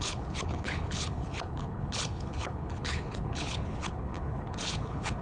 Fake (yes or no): yes